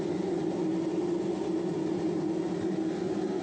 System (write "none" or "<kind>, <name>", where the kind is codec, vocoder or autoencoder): none